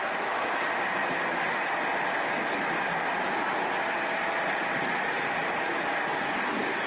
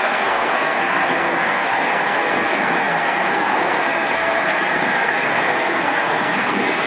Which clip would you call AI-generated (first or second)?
second